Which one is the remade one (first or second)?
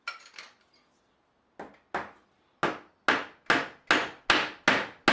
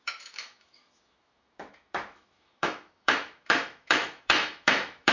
second